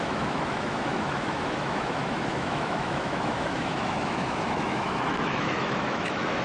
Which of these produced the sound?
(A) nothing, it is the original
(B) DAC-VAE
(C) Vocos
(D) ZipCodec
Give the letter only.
B